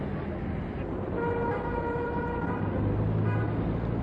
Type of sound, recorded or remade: recorded